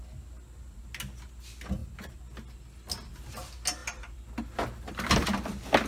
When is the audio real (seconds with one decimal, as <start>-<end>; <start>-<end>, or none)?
0.0-5.9